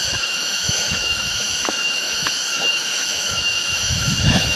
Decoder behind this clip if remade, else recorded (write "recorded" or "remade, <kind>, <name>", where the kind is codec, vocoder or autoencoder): remade, autoencoder, DAC-VAE